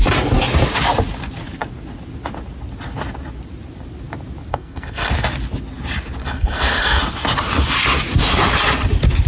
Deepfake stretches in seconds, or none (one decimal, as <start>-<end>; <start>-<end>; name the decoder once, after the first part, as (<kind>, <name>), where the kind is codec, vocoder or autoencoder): 4.5-5.1 (codec, SNAC); 6.2-7.0